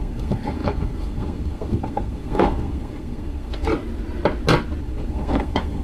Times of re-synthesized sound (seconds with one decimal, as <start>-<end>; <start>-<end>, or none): 0.0-3.7; 4.8-5.8